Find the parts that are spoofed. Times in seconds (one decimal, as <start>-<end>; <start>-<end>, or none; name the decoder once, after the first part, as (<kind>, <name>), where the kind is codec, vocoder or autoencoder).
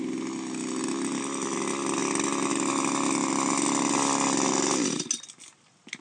none